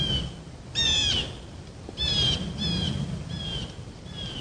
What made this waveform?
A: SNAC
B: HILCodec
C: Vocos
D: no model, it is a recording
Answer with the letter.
D